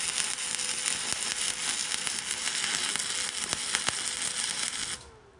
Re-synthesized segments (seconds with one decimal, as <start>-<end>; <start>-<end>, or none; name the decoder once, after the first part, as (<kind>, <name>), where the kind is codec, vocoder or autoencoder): none